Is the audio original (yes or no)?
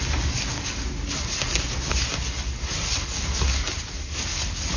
yes